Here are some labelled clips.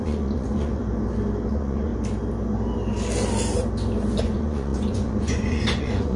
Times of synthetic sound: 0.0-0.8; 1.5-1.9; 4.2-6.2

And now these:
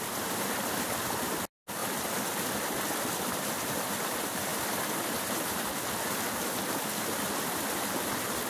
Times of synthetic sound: none

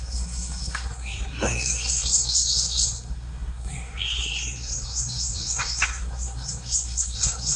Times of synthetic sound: 0.0-7.6

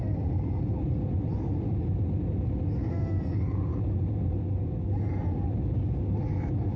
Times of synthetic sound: none

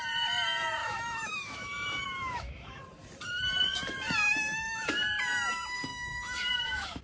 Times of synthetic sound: 0.8-2.8; 4.3-5.0; 5.9-7.0

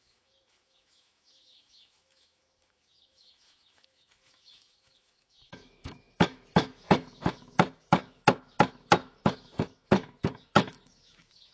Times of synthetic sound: 0.0-11.5

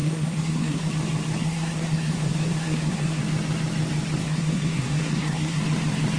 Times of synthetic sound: 0.0-0.9; 1.4-3.2; 4.2-5.6

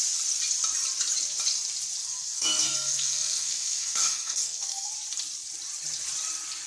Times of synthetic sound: 2.0-4.9